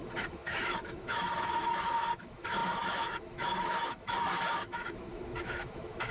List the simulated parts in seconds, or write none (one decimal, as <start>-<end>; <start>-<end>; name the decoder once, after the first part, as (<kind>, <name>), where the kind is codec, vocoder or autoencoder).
0.0-6.1 (autoencoder, DAC-VAE)